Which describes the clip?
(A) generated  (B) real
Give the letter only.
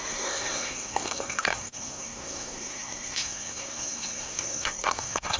A